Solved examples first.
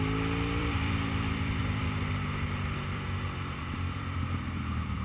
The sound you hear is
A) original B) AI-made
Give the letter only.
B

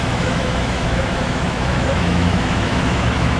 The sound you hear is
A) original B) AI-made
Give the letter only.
B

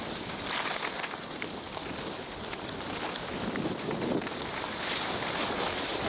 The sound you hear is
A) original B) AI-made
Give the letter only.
A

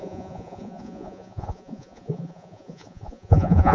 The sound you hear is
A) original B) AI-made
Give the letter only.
B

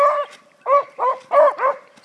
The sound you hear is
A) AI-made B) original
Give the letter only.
B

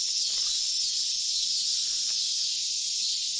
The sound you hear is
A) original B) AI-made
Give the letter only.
A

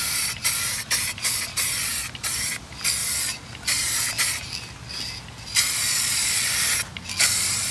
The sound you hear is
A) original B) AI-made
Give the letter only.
A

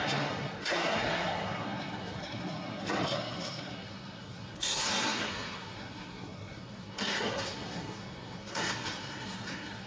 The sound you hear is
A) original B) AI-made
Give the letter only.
B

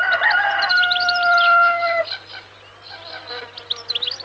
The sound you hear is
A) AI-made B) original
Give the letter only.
B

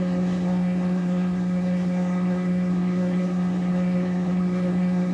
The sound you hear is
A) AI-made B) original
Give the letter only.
A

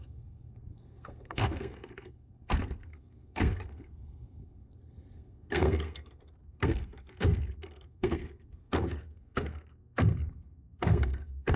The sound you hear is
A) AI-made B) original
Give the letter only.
A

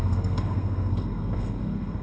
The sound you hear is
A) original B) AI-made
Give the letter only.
B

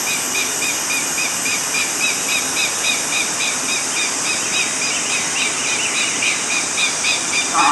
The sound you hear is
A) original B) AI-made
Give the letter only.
B